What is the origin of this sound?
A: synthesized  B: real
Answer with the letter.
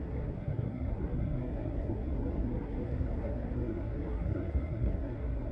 A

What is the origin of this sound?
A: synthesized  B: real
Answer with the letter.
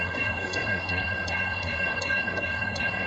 A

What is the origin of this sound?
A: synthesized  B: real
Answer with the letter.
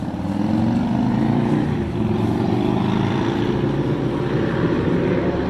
B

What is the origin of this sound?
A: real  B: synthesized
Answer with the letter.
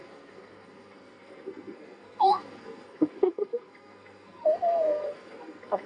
B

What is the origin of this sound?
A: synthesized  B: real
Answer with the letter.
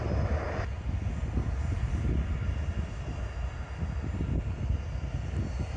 B